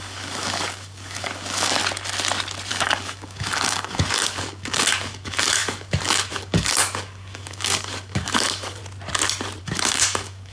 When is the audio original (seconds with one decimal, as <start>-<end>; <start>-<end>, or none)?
1.8-2.7; 8.8-9.6